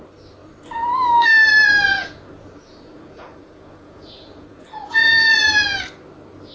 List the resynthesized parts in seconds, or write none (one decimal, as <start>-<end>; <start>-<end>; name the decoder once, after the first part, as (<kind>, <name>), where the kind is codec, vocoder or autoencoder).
1.9-5.8 (vocoder, Vocos)